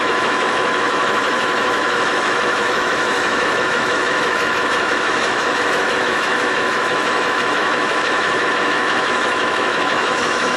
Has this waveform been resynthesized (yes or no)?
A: yes